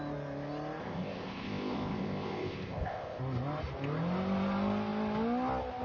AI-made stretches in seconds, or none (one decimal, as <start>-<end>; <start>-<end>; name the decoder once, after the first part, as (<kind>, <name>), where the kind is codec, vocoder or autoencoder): 0.8-3.2 (codec, ZipCodec)